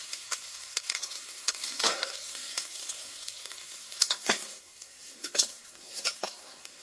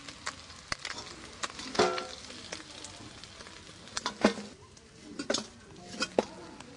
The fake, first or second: first